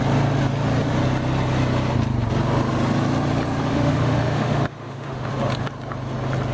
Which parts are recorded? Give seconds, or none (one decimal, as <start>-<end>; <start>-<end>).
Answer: 0.0-3.7; 5.3-6.5